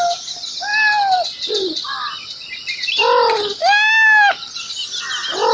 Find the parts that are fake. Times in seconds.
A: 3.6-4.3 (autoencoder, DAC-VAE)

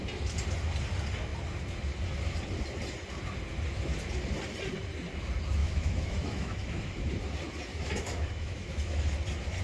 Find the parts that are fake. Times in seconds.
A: 5.6-7.1 (autoencoder, DAC-VAE); 7.7-9.0

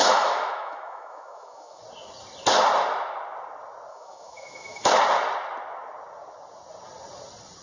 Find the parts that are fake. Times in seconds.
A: 0.0-1.8 (autoencoder, DAC-VAE); 3.9-4.9

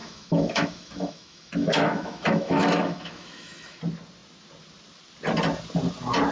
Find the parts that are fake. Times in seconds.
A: 0.0-3.8 (autoencoder, DAC-VAE)

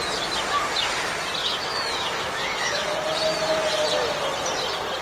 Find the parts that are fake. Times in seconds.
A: 1.4-2.9 (autoencoder, DAC-VAE)